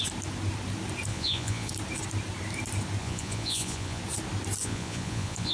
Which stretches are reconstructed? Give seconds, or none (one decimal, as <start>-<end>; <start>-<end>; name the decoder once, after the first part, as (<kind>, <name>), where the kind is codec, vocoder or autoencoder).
1.1-1.7 (vocoder, Vocos); 3.0-4.0; 4.6-5.5

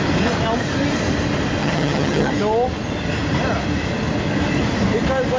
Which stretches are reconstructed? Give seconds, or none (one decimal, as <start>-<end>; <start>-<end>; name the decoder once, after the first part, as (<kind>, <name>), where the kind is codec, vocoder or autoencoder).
1.6-2.3 (vocoder, HiFi-GAN)